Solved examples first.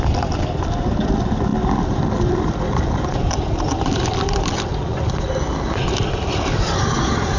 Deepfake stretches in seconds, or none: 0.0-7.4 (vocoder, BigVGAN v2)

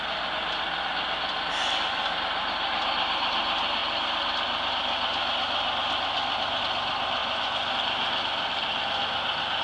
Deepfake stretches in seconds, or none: 7.2-7.7 (vocoder, Vocos)

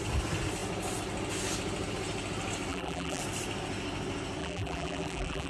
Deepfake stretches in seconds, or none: 2.7-3.2 (vocoder, BigVGAN v2); 4.4-5.5

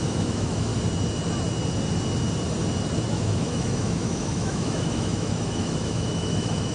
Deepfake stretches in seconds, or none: 0.0-0.7 (autoencoder, DAC-VAE); 3.1-6.7

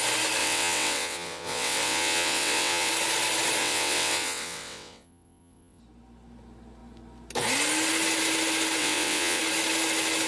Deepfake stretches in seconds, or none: 0.4-2.9 (vocoder, WaveNeXt); 3.6-5.8; 8.8-9.4

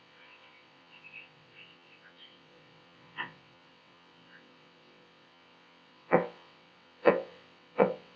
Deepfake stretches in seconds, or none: 0.0-8.2 (vocoder, WaveNeXt)